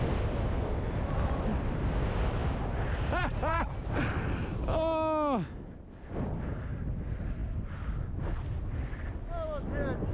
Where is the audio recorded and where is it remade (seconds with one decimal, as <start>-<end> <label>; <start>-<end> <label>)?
0.0-10.1 recorded